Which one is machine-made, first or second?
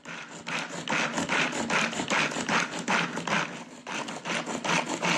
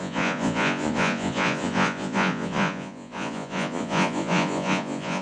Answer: second